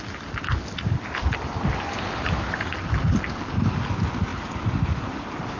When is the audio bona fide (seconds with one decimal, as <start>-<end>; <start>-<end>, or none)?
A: 0.0-5.6